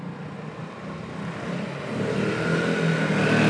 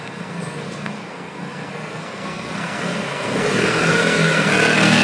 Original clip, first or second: first